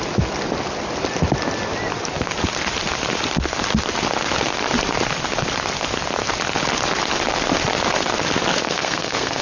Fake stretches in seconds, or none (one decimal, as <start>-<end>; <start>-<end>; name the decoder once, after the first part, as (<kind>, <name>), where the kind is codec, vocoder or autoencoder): 8.5-9.4 (codec, SNAC)